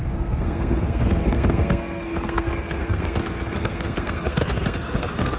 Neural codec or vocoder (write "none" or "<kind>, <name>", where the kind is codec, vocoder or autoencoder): codec, SNAC